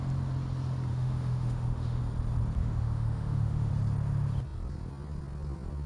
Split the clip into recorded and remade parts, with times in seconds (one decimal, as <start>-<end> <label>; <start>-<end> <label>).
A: 0.0-0.9 recorded; 0.9-2.0 remade; 2.0-2.6 recorded; 2.6-3.7 remade; 3.7-5.9 recorded